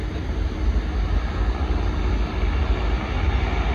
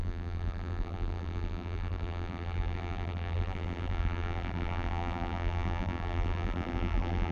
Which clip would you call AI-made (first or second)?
second